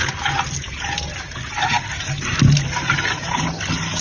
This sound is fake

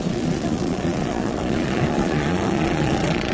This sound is fake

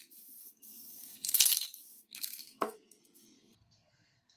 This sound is fake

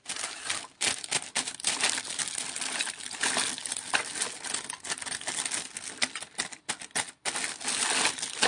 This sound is real